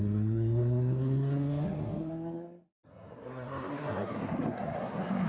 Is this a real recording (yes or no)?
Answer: no